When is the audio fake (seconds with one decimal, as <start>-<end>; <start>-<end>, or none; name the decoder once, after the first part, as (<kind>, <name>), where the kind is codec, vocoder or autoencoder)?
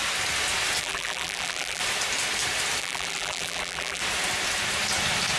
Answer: 0.8-1.8 (vocoder, BigVGAN v2); 2.8-4.0